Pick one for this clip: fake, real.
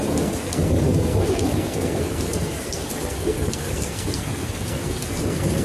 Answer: fake